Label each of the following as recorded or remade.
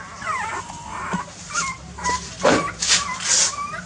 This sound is recorded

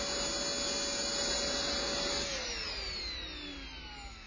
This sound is recorded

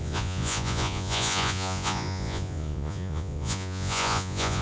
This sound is remade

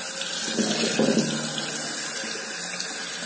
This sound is recorded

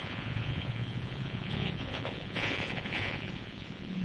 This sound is remade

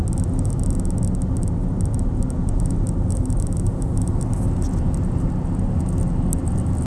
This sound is recorded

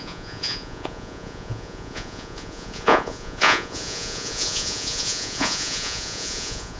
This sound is remade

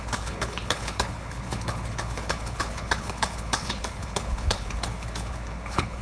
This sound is remade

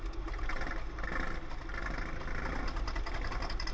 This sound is recorded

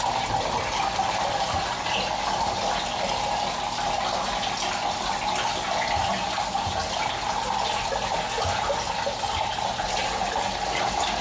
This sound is recorded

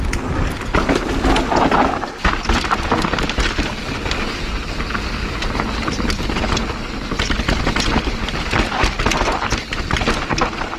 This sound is recorded